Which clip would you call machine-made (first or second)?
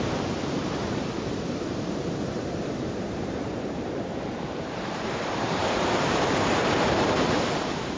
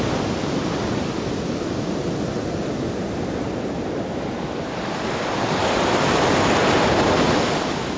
first